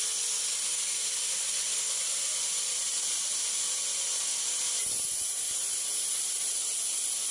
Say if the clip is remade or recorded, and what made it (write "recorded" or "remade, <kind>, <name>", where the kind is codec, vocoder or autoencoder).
recorded